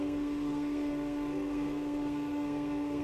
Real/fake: fake